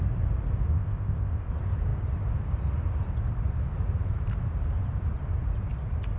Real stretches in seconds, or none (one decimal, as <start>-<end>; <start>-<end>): 0.0-0.7; 1.5-6.2